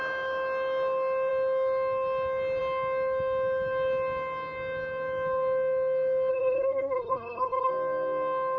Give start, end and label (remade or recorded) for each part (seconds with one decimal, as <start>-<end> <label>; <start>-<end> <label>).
0.0-6.3 recorded; 6.3-7.7 remade; 7.7-8.6 recorded